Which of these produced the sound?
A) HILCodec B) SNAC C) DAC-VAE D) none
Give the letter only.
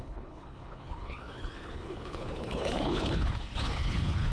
A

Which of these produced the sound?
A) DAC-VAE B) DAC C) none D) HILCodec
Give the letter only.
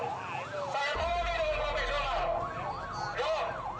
C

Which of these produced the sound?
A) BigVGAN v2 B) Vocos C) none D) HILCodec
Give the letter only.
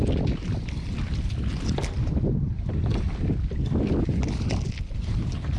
C